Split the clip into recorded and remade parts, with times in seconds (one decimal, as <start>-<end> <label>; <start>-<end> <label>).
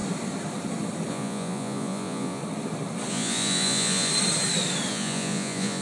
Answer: 0.0-1.1 recorded; 1.1-2.4 remade; 2.4-3.1 recorded; 3.1-4.1 remade; 4.1-4.9 recorded; 4.9-5.8 remade